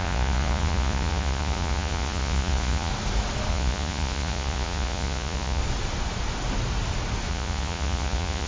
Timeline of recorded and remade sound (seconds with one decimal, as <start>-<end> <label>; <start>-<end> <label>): 0.0-2.9 remade; 2.9-3.5 recorded; 3.5-5.6 remade; 5.6-7.3 recorded; 7.3-8.5 remade